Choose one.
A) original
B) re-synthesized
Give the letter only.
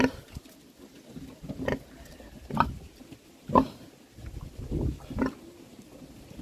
A